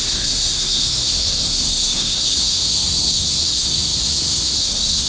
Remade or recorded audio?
remade